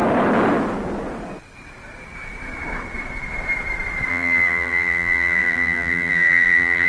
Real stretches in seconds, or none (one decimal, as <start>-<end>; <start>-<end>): 0.0-4.1

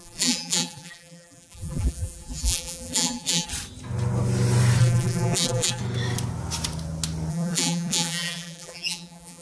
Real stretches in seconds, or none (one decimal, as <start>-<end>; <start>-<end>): 3.5-4.8; 5.8-7.3